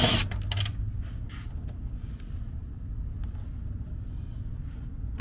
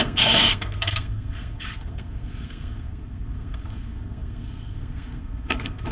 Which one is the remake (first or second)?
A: second